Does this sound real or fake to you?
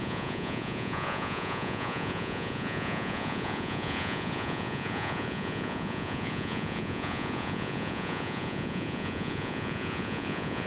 fake